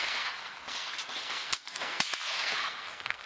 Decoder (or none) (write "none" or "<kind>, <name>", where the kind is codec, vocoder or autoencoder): codec, SNAC